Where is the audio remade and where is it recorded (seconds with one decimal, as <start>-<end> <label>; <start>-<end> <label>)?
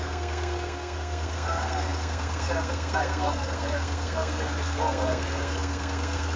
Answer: 0.0-6.4 remade